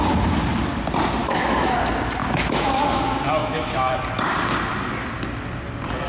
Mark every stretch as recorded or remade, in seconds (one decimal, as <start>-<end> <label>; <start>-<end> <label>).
0.0-1.2 recorded; 1.2-1.8 remade; 1.8-2.2 recorded; 2.2-2.8 remade; 2.8-3.4 recorded; 3.4-3.9 remade; 3.9-6.1 recorded